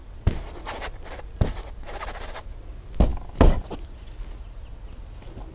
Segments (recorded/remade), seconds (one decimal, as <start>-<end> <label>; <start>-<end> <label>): 0.0-2.4 remade; 2.4-5.5 recorded